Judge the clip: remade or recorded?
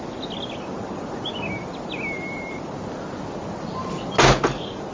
recorded